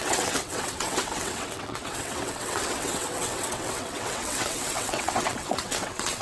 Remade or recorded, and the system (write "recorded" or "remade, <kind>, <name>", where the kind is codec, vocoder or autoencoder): remade, vocoder, WaveNeXt